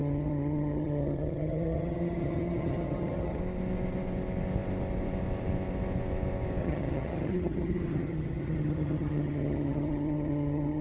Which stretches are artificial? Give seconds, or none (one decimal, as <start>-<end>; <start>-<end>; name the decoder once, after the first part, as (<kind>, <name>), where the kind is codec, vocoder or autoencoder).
0.0-3.4 (vocoder, HiFi-GAN); 6.6-10.8